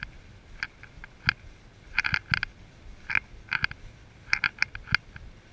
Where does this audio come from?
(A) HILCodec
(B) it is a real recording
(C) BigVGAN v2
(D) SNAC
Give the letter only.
B